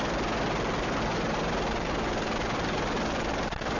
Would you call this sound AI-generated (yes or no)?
no